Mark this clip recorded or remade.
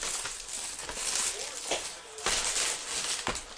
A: recorded